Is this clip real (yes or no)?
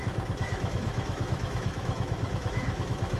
no